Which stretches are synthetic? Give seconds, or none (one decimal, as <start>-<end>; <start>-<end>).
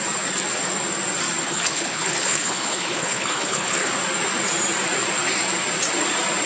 1.4-3.9